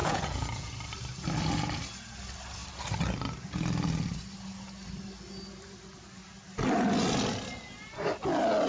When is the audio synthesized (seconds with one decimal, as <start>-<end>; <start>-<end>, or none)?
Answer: 0.0-0.7